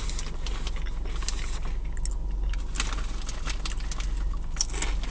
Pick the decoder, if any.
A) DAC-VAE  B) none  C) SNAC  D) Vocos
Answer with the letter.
B